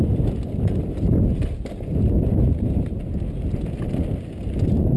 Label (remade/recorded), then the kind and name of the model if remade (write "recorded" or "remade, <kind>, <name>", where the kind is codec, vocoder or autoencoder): recorded